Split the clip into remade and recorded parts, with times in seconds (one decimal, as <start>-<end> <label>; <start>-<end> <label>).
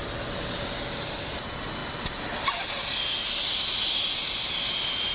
0.0-5.1 recorded